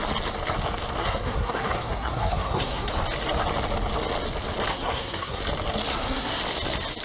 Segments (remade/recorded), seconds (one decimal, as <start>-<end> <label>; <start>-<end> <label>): 0.0-1.0 recorded; 1.0-2.9 remade; 2.9-4.7 recorded; 4.7-5.4 remade; 5.4-5.9 recorded; 5.9-6.4 remade; 6.4-7.0 recorded